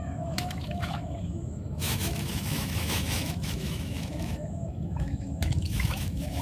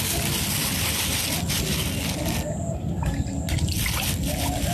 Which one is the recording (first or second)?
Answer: second